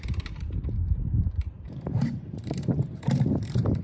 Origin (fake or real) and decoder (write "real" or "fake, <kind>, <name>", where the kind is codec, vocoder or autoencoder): fake, vocoder, BigVGAN v2